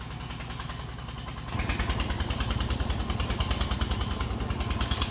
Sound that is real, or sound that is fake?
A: real